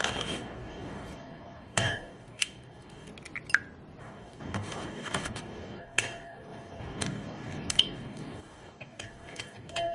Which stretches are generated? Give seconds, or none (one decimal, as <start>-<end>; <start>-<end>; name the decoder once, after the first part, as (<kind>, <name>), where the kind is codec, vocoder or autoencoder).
0.0-3.1 (codec, DAC); 4.0-9.9